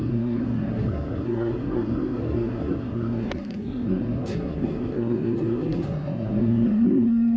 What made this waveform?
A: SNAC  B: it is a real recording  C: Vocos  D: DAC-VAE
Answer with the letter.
A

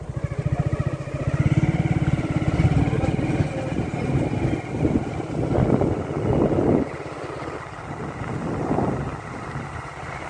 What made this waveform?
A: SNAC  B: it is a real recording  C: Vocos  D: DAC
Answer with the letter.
B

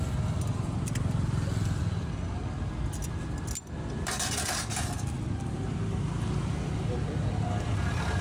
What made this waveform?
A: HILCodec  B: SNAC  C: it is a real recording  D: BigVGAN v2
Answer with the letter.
C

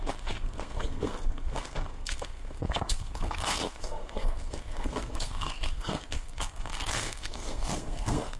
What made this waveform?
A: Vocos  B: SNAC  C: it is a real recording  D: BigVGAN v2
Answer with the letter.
B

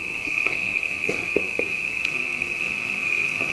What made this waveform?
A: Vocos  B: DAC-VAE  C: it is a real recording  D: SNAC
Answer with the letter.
D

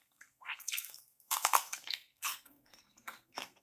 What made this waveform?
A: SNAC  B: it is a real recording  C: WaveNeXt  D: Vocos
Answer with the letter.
A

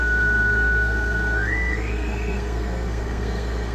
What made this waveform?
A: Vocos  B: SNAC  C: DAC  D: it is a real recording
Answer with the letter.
B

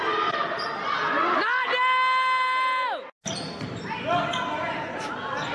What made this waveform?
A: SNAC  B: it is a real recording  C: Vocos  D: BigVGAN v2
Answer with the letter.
B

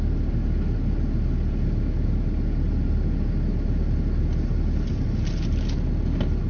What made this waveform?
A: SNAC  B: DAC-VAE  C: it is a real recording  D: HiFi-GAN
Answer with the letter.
C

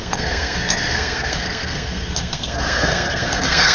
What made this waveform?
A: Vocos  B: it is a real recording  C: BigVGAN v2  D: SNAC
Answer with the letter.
D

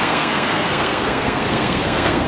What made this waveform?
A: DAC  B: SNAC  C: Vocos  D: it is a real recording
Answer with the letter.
B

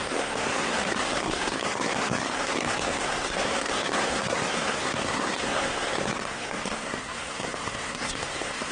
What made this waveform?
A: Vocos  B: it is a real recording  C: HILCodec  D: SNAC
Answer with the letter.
D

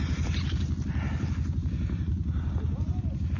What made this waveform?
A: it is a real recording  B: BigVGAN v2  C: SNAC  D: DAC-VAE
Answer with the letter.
A